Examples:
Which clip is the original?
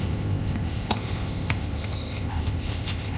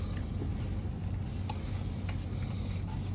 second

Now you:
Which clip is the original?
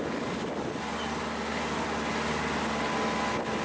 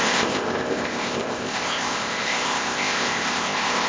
first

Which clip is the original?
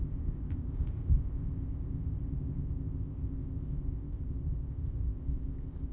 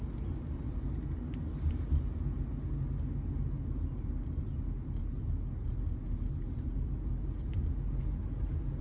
second